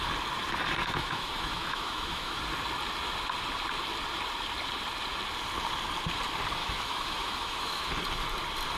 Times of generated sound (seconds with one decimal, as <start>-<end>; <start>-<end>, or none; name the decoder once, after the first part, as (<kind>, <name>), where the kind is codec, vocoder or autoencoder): 0.8-2.4 (autoencoder, DAC-VAE); 6.6-7.9